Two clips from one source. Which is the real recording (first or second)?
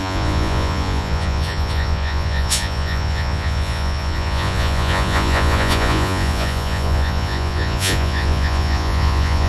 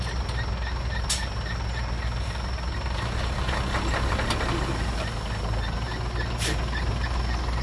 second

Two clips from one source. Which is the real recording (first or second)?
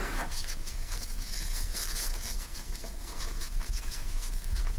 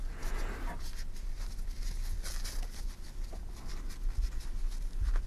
second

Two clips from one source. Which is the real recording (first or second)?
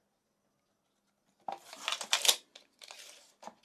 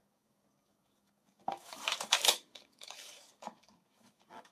first